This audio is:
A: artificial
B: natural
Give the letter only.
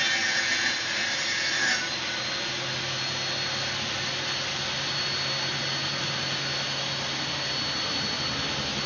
B